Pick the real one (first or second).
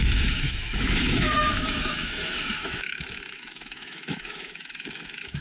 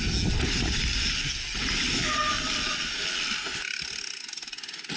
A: second